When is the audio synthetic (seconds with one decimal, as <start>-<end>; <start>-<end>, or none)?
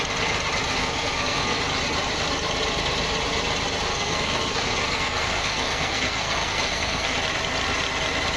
0.8-1.6; 3.9-7.2